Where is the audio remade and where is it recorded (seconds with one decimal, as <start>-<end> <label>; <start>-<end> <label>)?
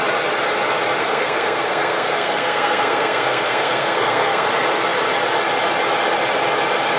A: 0.0-1.0 recorded; 1.0-4.5 remade; 4.5-7.0 recorded